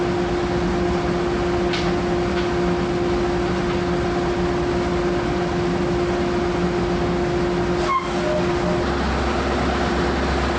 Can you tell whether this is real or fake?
real